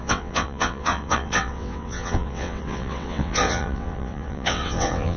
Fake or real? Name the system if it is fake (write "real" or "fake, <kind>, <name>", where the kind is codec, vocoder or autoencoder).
fake, vocoder, WaveNeXt